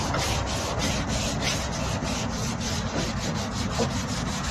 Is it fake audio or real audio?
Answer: real